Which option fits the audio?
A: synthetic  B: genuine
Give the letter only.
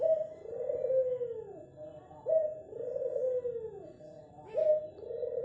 B